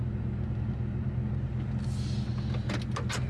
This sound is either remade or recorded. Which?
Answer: recorded